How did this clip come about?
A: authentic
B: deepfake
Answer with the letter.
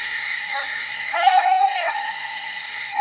B